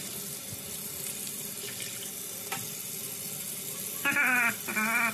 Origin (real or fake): real